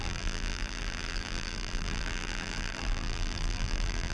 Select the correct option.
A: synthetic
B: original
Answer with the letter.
A